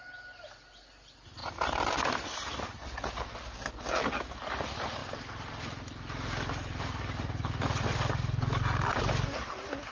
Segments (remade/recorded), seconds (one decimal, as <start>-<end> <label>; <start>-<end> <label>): 0.0-9.9 remade

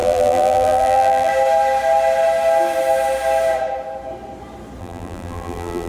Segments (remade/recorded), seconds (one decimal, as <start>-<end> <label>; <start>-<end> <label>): 0.0-1.3 remade; 1.3-4.8 recorded; 4.8-5.9 remade

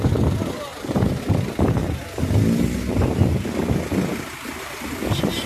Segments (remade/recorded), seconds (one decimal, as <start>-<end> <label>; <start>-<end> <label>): 0.0-0.7 recorded; 0.7-1.2 remade; 1.2-5.5 recorded

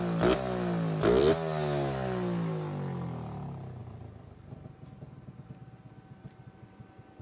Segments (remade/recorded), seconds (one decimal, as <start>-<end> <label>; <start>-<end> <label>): 0.0-3.8 recorded; 3.8-4.7 remade; 4.7-7.2 recorded

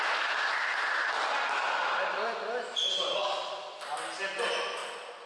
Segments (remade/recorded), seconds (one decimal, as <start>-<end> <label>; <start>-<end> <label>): 0.0-5.3 recorded